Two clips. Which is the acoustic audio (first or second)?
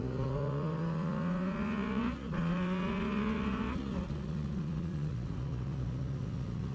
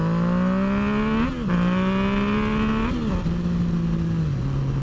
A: second